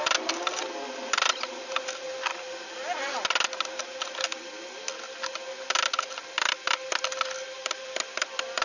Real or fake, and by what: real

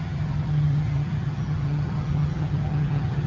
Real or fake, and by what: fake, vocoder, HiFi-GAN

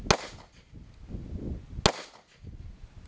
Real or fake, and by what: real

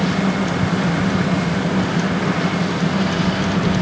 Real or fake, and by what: real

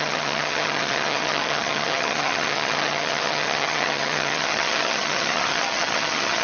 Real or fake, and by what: fake, vocoder, HiFi-GAN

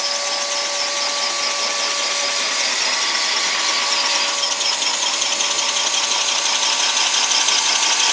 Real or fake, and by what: real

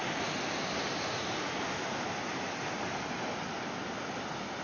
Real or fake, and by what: real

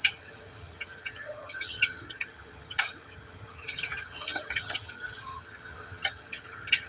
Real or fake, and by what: fake, vocoder, HiFi-GAN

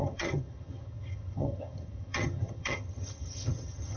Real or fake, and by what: fake, vocoder, HiFi-GAN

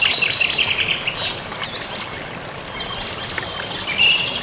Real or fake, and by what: real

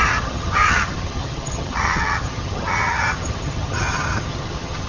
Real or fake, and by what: fake, vocoder, HiFi-GAN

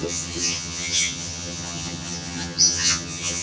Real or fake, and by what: fake, vocoder, HiFi-GAN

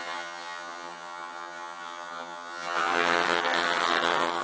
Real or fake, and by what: fake, vocoder, HiFi-GAN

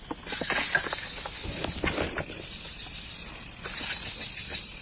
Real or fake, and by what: real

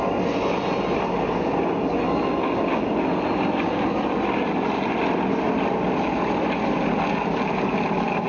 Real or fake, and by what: real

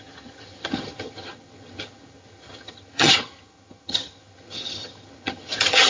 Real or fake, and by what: fake, vocoder, HiFi-GAN